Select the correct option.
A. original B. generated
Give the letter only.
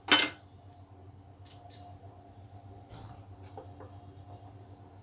A